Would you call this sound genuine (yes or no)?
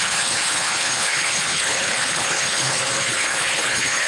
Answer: no